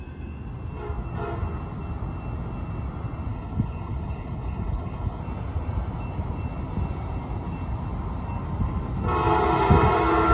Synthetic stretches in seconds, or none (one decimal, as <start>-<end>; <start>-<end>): 3.3-5.2